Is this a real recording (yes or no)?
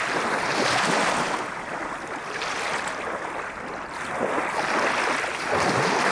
yes